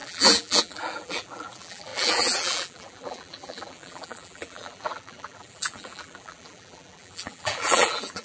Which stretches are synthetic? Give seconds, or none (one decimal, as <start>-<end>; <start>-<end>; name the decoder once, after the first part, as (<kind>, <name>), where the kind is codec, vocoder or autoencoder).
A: 0.0-8.2 (vocoder, BigVGAN v2)